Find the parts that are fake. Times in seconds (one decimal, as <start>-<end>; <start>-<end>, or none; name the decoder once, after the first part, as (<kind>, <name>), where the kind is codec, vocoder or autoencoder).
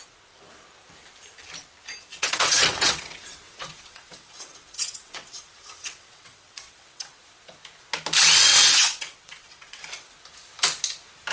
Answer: 2.1-7.2 (vocoder, WaveNeXt); 8.5-9.8